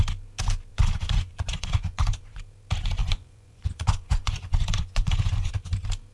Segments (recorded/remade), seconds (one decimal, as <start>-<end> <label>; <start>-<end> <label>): 0.0-0.7 recorded; 0.7-2.4 remade; 2.4-3.0 recorded; 3.0-5.5 remade; 5.5-6.1 recorded